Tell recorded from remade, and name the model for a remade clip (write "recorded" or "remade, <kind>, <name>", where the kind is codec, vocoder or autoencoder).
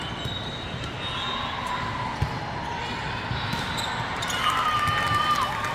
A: recorded